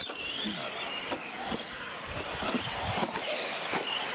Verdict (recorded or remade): remade